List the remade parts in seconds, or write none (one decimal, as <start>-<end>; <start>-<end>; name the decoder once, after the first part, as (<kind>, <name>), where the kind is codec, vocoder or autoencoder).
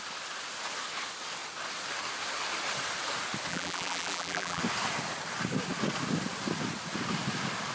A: 3.5-4.6 (vocoder, BigVGAN v2)